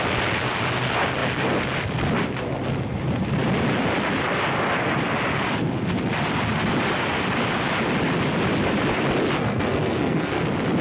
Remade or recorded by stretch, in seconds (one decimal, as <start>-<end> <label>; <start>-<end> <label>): 0.0-9.4 recorded; 9.4-10.4 remade; 10.4-10.8 recorded